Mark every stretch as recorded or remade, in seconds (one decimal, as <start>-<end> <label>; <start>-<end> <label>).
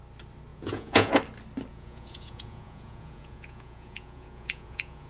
0.0-0.5 recorded; 0.5-1.1 remade; 1.1-1.7 recorded; 1.7-5.1 remade